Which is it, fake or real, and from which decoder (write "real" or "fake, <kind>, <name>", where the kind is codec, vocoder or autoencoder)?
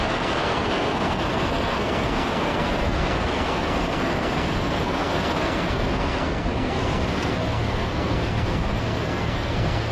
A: fake, codec, SNAC